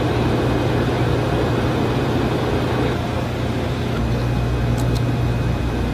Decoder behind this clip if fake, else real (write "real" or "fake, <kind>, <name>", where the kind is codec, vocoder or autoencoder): real